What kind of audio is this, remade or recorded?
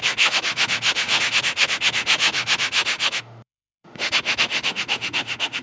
remade